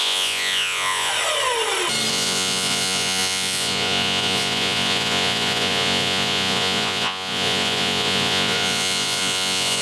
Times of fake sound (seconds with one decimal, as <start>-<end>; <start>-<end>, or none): 0.0-1.1; 2.1-9.8